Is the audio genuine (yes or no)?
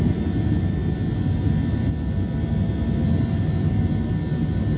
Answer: yes